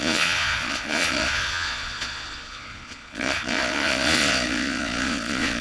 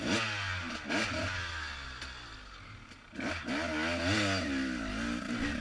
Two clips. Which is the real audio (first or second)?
second